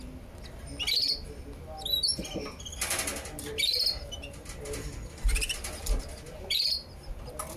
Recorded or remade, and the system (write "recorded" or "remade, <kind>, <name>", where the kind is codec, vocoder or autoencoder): recorded